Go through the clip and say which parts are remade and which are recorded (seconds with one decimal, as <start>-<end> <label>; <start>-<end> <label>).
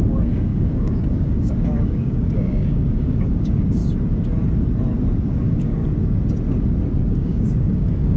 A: 0.0-3.8 remade; 3.8-5.2 recorded; 5.2-5.8 remade; 5.8-7.1 recorded; 7.1-8.2 remade